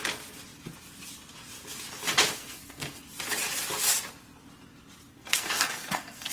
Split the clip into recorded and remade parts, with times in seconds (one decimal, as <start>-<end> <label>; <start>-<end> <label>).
0.0-2.4 recorded; 2.4-3.0 remade; 3.0-5.1 recorded; 5.1-6.3 remade